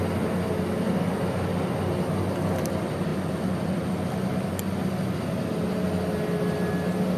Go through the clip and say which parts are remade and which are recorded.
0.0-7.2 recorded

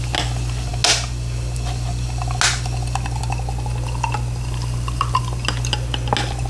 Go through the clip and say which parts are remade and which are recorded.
0.0-6.5 recorded

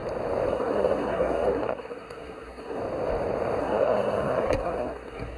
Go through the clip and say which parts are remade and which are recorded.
0.0-0.5 recorded; 0.5-2.8 remade; 2.8-3.6 recorded; 3.6-5.4 remade

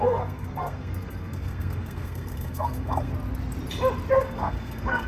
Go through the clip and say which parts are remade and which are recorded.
0.0-3.1 remade; 3.1-4.2 recorded; 4.2-5.1 remade

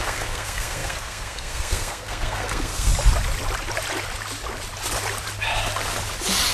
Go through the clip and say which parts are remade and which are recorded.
0.0-2.9 remade; 2.9-6.5 recorded

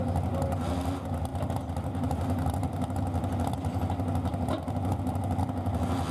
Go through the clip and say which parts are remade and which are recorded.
0.0-6.1 recorded

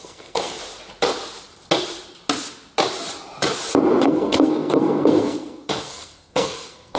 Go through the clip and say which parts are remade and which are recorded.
0.0-0.6 remade; 0.6-4.0 recorded; 4.0-7.0 remade

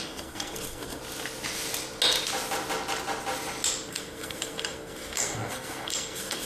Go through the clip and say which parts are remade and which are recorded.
0.0-1.0 remade; 1.0-3.9 recorded; 3.9-6.5 remade